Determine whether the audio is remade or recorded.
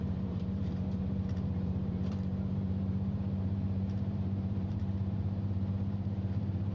remade